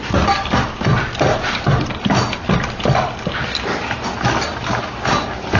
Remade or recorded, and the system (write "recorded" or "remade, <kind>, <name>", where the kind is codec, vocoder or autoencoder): recorded